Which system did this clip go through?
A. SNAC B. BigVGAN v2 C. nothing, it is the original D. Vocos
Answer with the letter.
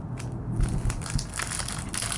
C